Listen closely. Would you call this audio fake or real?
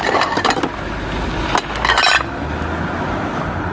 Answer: real